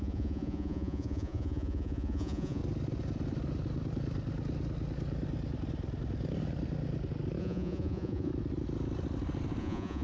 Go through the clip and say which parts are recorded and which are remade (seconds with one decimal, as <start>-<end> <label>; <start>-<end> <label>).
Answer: 0.0-2.6 remade; 2.6-7.4 recorded; 7.4-8.3 remade; 8.3-9.6 recorded; 9.6-10.0 remade